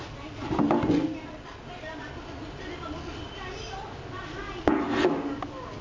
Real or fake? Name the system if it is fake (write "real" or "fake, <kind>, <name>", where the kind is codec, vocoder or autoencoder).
real